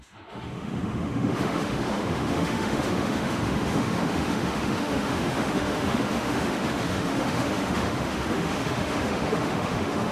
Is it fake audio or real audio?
fake